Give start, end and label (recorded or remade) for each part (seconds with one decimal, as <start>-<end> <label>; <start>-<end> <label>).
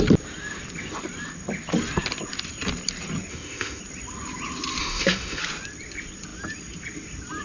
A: 0.0-3.3 recorded; 3.3-3.8 remade; 3.8-4.8 recorded; 4.8-5.4 remade; 5.4-7.4 recorded